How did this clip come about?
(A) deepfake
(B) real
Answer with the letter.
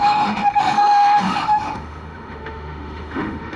A